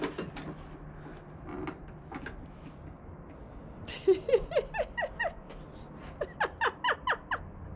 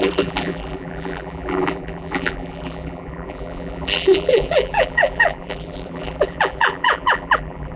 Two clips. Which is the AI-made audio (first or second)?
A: second